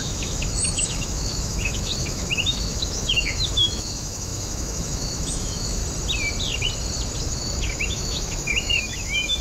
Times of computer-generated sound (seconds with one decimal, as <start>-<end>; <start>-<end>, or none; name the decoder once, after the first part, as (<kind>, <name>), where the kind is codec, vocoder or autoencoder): 0.0-5.8 (autoencoder, DAC-VAE); 7.2-9.4